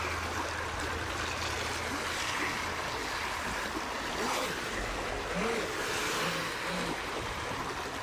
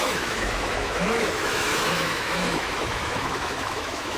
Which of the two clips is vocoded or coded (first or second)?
second